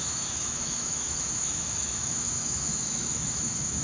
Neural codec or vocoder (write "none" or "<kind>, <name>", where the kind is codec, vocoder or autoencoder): autoencoder, DAC-VAE